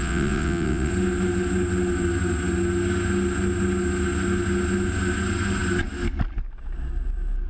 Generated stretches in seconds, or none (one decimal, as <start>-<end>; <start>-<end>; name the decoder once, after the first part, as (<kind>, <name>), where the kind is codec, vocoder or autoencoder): 0.0-0.9 (vocoder, WaveNeXt)